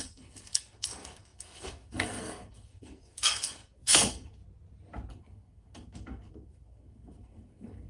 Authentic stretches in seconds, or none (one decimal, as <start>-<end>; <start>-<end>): 4.4-5.1